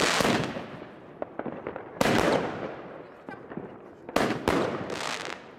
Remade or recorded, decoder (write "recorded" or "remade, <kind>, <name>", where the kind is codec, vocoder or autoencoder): recorded